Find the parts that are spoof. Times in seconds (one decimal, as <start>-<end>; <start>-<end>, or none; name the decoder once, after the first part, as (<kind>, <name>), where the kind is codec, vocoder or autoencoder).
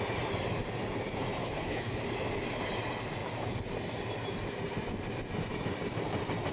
1.4-2.0 (codec, HILCodec)